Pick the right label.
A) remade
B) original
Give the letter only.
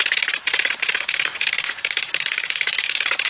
B